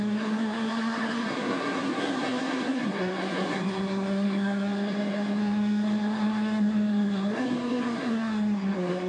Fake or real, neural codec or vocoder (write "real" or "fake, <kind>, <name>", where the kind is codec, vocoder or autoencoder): fake, codec, SNAC